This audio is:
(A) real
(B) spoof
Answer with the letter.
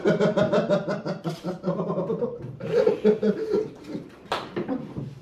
B